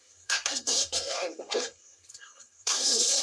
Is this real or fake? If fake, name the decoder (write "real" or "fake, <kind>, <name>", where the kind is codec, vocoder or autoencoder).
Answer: fake, codec, SNAC